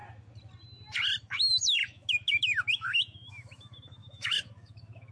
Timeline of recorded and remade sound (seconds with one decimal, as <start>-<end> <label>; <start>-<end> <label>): 0.0-1.2 recorded; 1.2-5.1 remade